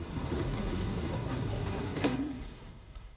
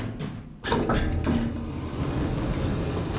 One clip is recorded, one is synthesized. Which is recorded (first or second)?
second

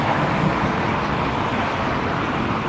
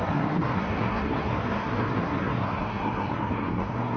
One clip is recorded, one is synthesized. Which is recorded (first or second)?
first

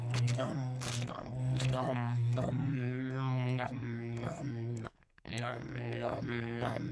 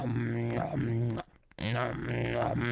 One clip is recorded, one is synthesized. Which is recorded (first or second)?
second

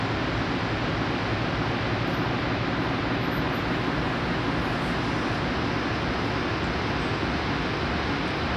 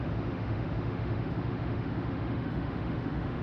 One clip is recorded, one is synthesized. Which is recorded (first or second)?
first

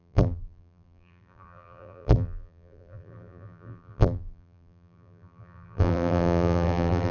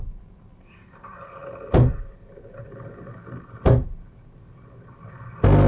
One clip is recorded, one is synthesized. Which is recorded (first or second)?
second